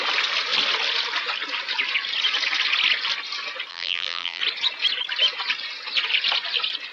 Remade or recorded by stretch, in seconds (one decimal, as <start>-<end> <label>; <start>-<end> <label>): 0.0-3.7 recorded; 3.7-4.4 remade; 4.4-6.9 recorded